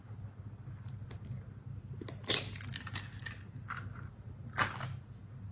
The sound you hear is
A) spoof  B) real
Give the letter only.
B